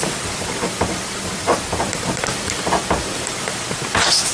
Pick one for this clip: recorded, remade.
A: remade